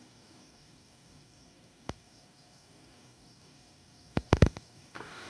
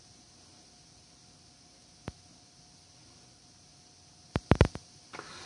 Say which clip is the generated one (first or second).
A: first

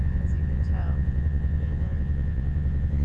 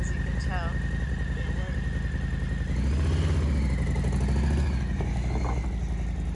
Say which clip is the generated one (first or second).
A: first